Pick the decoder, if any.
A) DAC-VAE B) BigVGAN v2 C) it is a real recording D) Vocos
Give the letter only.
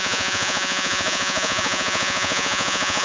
D